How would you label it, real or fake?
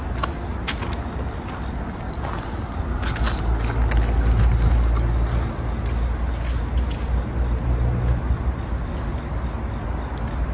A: real